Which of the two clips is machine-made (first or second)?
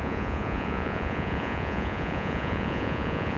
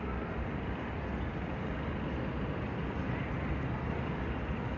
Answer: first